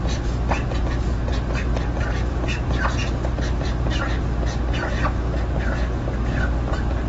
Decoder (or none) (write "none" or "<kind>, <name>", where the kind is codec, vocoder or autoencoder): none